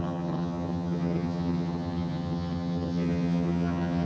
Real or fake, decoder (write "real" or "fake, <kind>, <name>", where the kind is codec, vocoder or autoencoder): fake, vocoder, HiFi-GAN